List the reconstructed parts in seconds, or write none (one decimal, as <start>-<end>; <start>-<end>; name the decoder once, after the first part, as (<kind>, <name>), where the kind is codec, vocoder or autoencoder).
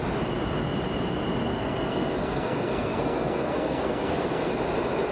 1.5-4.5 (codec, SNAC)